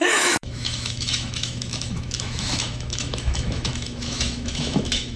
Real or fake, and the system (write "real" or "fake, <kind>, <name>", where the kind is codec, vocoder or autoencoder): fake, autoencoder, DAC-VAE